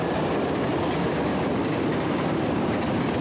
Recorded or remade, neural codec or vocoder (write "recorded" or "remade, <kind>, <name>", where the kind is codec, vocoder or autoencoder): recorded